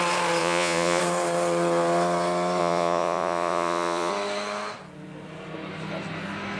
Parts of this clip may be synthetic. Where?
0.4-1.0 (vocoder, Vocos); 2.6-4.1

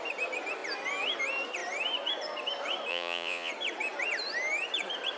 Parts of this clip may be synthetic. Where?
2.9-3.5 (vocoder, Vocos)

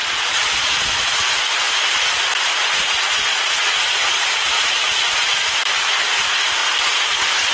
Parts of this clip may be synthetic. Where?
0.0-1.1 (vocoder, Vocos); 3.1-5.5

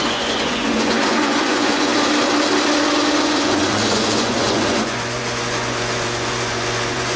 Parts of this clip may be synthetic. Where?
0.0-1.9 (vocoder, Vocos); 3.2-7.2

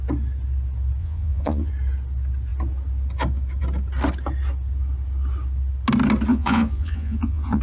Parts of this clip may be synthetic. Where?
1.0-1.7 (vocoder, Vocos); 6.3-7.6

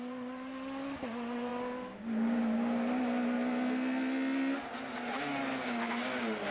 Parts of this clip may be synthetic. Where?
none

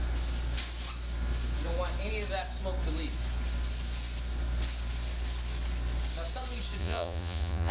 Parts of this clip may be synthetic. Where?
6.8-7.7 (vocoder, Vocos)